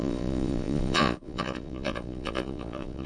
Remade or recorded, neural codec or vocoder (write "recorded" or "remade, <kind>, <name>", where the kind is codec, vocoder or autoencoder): remade, vocoder, Vocos